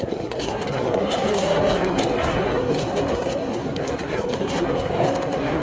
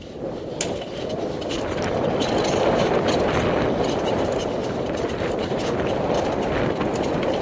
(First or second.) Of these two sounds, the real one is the second